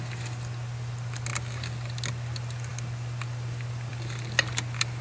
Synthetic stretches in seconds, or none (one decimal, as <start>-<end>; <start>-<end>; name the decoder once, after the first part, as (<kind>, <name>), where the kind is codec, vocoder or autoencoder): none